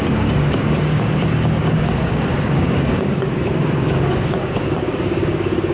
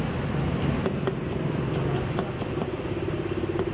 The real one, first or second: second